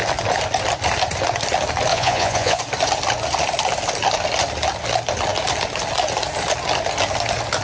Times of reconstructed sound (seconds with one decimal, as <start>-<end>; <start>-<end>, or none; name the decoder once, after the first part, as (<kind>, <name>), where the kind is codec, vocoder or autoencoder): 1.9-2.6 (vocoder, Vocos)